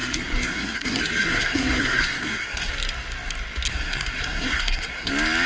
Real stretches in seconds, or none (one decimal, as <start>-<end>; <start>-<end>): 2.7-3.7; 5.1-5.5